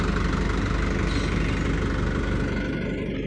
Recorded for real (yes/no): yes